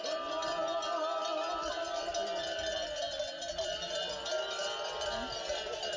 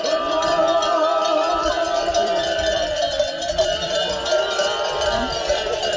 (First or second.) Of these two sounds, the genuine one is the first